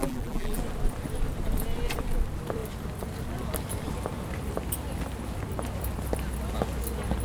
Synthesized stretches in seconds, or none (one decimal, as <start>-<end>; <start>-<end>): 0.0-0.6